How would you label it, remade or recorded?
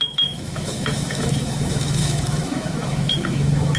remade